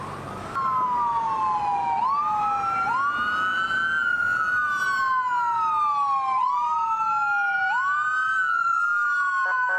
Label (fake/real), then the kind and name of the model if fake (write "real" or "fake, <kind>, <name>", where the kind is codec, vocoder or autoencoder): real